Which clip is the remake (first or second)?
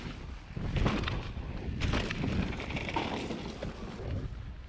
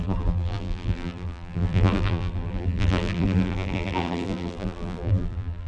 second